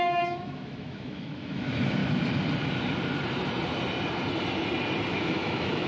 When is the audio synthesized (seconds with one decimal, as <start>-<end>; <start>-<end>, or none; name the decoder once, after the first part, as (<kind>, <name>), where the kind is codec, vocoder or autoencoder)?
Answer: 0.0-2.0 (autoencoder, DAC-VAE); 5.1-5.9